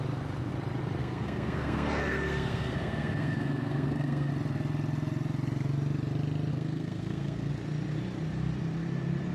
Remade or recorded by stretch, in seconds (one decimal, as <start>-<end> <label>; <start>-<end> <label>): 0.0-1.0 recorded; 1.0-4.3 remade; 4.3-6.5 recorded; 6.5-7.5 remade; 7.5-9.3 recorded